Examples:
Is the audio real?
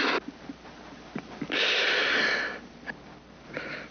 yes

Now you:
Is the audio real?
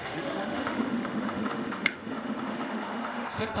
no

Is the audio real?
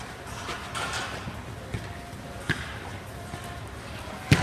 yes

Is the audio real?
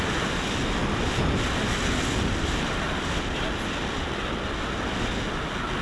yes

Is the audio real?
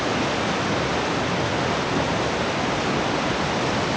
yes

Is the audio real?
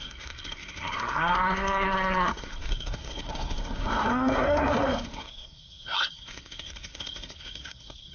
no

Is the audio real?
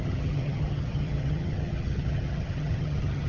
no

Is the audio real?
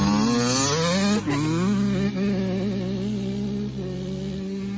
yes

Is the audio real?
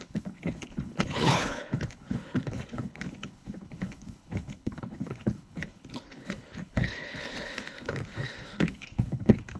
no